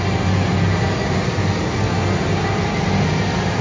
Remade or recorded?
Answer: recorded